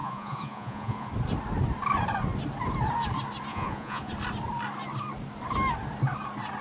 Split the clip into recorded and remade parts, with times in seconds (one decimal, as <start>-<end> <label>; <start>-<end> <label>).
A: 0.0-1.1 remade; 1.1-3.5 recorded; 3.5-4.1 remade; 4.1-6.6 recorded